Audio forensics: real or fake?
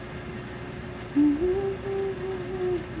real